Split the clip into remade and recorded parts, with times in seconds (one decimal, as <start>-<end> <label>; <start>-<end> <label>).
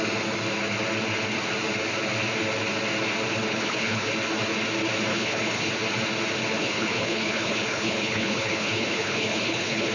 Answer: 0.0-3.5 recorded; 3.5-4.1 remade; 4.1-5.1 recorded; 5.1-5.7 remade; 5.7-6.6 recorded; 6.6-9.9 remade